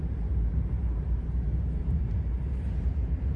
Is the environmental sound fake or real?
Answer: fake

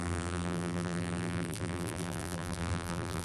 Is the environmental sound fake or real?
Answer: fake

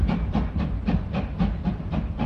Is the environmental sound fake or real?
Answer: fake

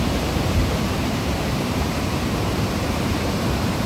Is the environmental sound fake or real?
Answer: fake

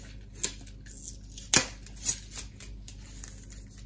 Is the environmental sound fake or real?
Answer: real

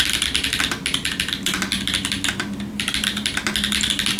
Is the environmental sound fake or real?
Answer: real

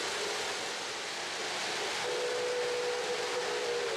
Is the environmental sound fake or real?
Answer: real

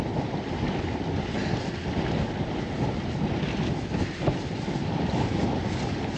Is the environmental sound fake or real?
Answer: real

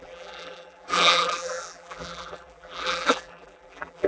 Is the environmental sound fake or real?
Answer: fake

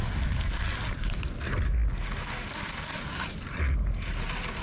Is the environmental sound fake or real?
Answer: real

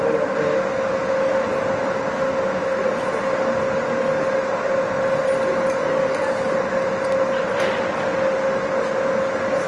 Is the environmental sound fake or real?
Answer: real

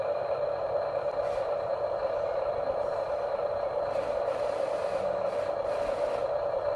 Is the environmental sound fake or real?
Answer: real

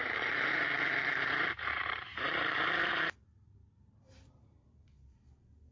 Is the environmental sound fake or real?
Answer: fake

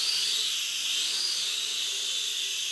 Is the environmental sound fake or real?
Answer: real